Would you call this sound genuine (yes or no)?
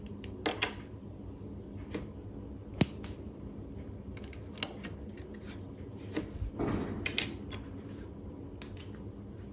yes